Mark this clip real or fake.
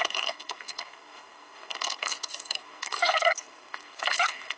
fake